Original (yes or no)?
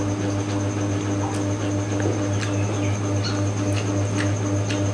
yes